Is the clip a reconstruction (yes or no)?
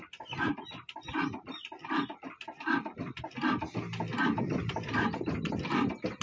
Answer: no